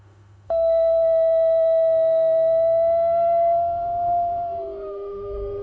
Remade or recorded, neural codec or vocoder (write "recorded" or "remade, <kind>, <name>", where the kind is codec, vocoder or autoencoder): remade, autoencoder, DAC-VAE